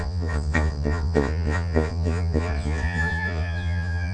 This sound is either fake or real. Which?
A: fake